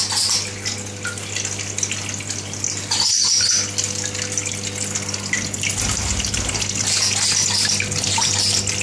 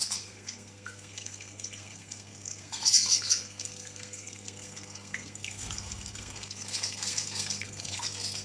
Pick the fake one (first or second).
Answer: second